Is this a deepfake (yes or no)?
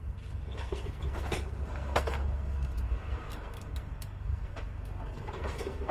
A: yes